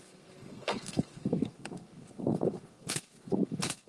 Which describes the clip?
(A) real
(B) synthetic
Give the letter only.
B